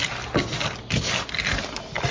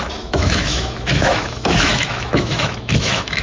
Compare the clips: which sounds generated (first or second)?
second